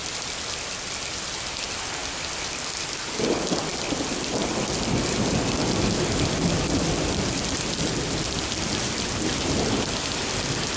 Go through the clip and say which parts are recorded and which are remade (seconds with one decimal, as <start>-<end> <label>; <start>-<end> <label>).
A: 0.0-10.8 recorded